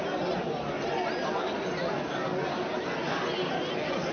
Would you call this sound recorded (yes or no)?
yes